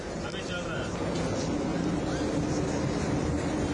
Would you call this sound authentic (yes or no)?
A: yes